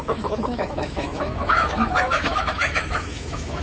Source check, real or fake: fake